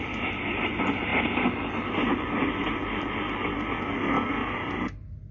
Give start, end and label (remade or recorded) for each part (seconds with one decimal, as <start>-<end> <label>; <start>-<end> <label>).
0.0-5.3 recorded